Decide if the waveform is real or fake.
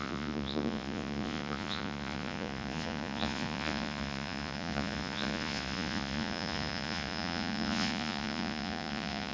fake